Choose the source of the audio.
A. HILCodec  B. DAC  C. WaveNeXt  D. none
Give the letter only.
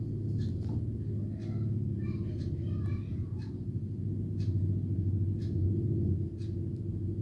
D